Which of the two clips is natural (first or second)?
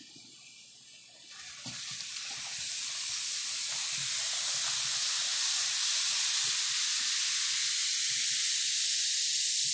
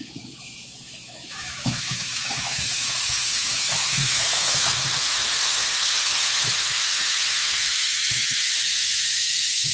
first